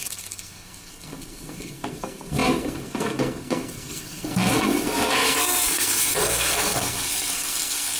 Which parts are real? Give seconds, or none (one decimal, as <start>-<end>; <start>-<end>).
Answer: none